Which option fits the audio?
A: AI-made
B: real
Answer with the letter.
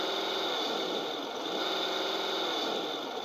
A